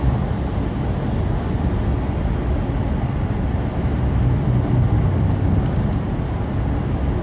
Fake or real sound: real